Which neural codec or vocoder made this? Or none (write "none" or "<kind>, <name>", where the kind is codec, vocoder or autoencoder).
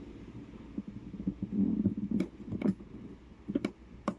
none